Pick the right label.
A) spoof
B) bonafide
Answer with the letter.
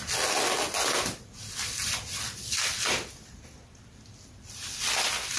B